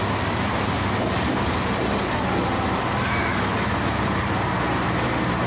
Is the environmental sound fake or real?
real